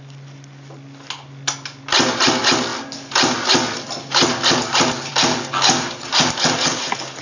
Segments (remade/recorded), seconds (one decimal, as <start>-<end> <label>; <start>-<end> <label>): 0.0-7.2 recorded